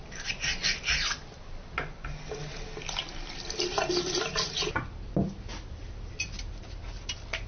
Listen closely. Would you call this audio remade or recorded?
recorded